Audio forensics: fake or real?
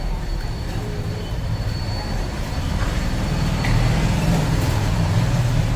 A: fake